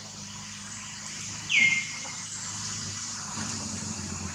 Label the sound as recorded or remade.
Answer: remade